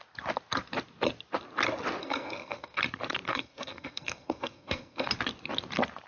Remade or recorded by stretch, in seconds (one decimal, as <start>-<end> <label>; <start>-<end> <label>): 0.0-2.0 recorded; 2.0-2.8 remade; 2.8-3.3 recorded; 3.3-5.1 remade; 5.1-6.1 recorded

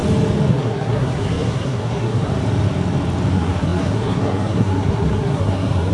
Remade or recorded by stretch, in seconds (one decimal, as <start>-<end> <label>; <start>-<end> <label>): 0.0-0.5 recorded; 0.5-2.3 remade; 2.3-3.3 recorded; 3.3-5.9 remade